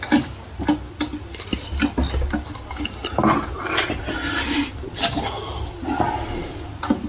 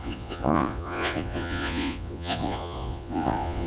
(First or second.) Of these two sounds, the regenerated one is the second